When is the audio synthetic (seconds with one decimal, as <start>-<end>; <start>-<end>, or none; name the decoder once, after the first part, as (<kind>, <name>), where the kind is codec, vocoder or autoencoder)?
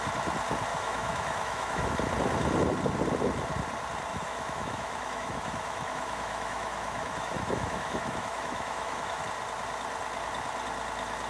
0.7-1.9 (autoencoder, DAC-VAE); 4.1-9.2